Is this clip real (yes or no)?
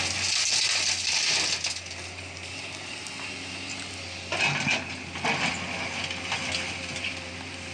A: yes